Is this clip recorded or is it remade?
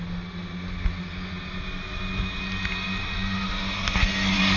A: recorded